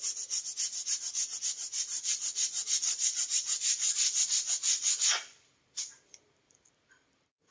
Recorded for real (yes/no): yes